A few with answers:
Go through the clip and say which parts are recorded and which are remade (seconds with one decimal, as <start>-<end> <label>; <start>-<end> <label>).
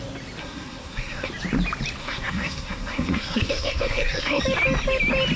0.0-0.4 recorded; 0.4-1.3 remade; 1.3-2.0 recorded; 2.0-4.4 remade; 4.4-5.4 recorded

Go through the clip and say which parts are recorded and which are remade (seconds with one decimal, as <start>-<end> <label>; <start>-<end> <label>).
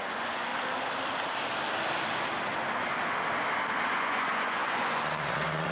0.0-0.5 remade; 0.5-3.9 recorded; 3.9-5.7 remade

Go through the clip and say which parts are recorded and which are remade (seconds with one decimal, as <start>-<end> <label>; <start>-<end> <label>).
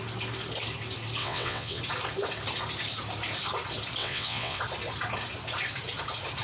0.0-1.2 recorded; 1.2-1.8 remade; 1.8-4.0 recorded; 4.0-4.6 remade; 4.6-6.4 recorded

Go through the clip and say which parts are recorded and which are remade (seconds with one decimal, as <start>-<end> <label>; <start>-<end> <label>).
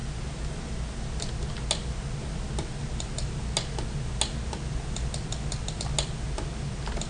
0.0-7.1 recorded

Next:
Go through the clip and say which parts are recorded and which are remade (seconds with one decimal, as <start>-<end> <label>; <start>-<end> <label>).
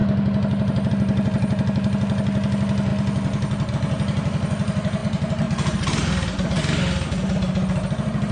0.0-8.3 recorded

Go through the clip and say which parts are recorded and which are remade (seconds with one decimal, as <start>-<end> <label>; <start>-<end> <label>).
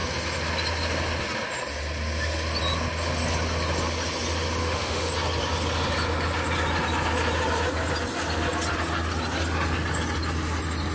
0.0-4.6 recorded; 4.6-5.1 remade; 5.1-10.9 recorded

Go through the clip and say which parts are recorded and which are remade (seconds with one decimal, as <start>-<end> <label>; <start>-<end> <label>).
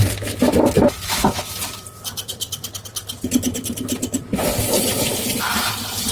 0.0-6.1 remade